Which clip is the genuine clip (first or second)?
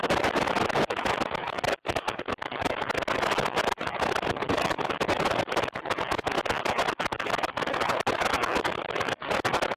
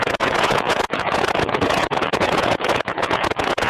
first